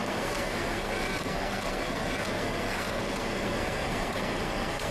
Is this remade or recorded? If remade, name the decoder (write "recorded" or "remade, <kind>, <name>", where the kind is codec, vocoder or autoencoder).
remade, codec, SNAC